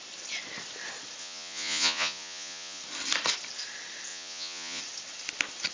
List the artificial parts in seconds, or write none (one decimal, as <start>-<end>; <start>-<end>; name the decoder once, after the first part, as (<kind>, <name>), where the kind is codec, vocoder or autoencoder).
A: 1.2-2.8 (vocoder, Vocos); 4.1-4.8